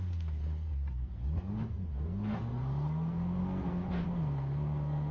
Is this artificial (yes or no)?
yes